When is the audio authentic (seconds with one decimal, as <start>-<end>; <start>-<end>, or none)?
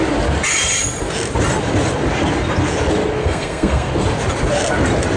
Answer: 0.0-3.2; 3.9-5.2